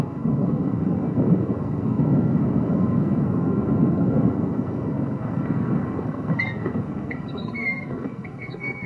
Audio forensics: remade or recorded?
remade